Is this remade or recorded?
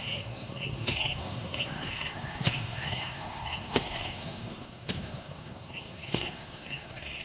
remade